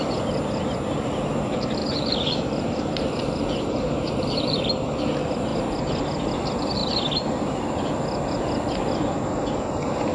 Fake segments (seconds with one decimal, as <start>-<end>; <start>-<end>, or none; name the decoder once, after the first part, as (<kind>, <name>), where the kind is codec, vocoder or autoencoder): 1.8-4.6 (vocoder, BigVGAN v2); 5.5-6.0